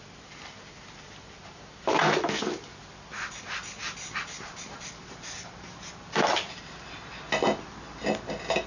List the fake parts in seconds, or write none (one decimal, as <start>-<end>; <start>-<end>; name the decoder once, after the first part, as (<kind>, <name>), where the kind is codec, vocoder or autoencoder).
none